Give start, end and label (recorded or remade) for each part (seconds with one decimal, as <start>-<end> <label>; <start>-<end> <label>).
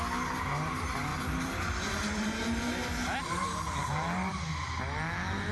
0.0-1.1 recorded; 1.1-2.6 remade; 2.6-3.0 recorded; 3.0-4.4 remade; 4.4-5.5 recorded